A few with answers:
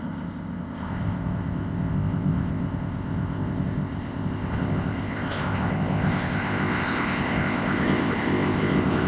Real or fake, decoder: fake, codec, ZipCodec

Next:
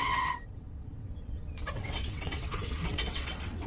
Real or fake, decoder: fake, vocoder, WaveNeXt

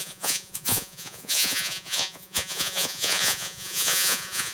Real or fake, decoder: fake, vocoder, Vocos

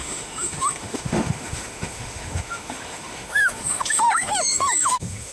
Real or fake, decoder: fake, autoencoder, DAC-VAE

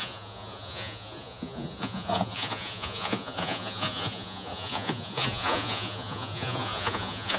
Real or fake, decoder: fake, vocoder, Vocos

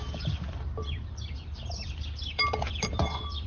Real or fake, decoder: fake, vocoder, BigVGAN v2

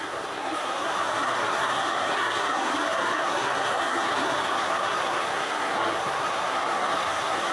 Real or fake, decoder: fake, codec, SNAC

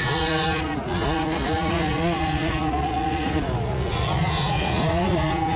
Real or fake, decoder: fake, vocoder, Vocos